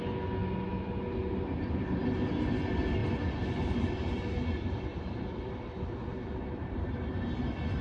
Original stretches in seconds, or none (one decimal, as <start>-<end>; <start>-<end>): 0.0-7.8